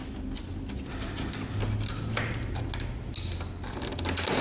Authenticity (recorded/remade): recorded